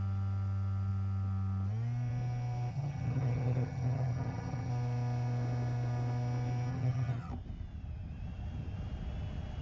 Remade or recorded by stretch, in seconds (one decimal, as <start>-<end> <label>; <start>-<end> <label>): 0.0-2.7 recorded; 2.7-4.7 remade; 4.7-6.7 recorded; 6.7-7.3 remade; 7.3-9.6 recorded